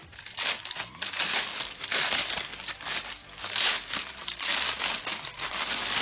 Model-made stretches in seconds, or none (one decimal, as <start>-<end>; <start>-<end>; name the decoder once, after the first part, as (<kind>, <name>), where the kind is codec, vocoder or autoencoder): none